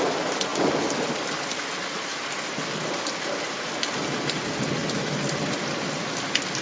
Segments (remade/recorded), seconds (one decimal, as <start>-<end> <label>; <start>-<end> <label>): 0.0-6.6 recorded

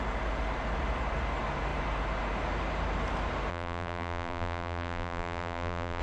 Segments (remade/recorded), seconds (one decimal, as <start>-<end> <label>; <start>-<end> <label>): 0.0-3.5 recorded; 3.5-6.0 remade

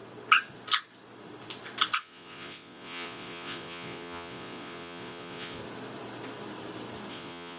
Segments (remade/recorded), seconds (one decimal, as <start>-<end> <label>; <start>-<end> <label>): 0.0-2.0 recorded; 2.0-5.6 remade; 5.6-7.1 recorded; 7.1-7.6 remade

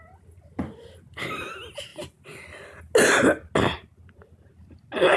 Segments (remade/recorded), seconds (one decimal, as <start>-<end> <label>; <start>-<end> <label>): 0.0-5.2 recorded

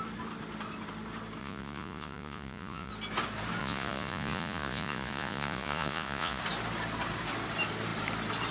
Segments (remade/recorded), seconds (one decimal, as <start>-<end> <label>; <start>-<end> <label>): 0.0-1.4 recorded; 1.4-2.9 remade; 2.9-3.6 recorded; 3.6-6.4 remade; 6.4-8.5 recorded

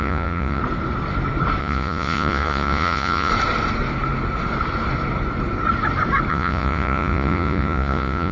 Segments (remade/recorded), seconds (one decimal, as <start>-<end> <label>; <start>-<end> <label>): 0.0-0.6 remade; 0.6-1.6 recorded; 1.6-3.3 remade; 3.3-6.3 recorded; 6.3-8.3 remade